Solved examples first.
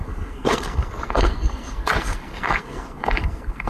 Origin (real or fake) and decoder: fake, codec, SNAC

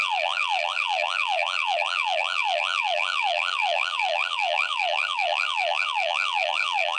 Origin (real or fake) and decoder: fake, vocoder, BigVGAN v2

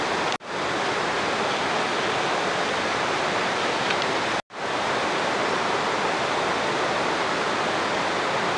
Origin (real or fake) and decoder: real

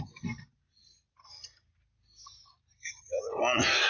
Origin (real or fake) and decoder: real